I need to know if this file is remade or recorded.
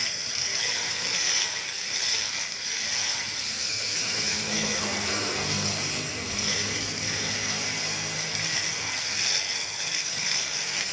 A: remade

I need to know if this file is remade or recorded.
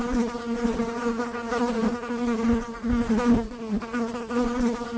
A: remade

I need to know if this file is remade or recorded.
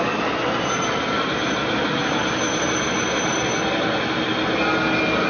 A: recorded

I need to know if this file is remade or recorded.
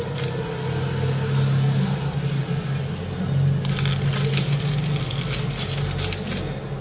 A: recorded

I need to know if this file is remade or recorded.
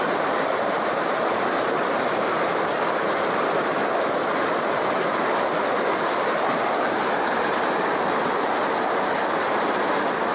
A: recorded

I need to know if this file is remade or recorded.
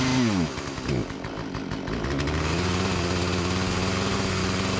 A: recorded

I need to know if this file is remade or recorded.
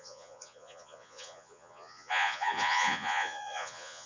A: remade